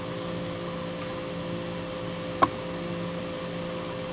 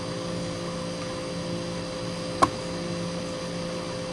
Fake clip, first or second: first